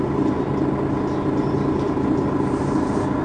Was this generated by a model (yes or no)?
no